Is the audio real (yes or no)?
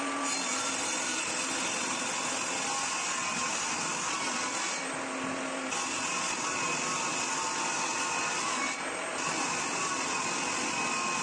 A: yes